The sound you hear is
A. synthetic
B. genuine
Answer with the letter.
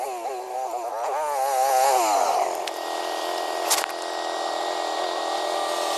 B